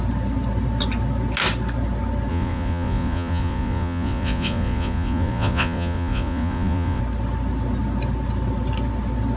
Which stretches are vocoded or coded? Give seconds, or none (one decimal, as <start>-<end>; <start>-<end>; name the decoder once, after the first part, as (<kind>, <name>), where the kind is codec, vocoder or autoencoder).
2.3-7.0 (vocoder, Vocos)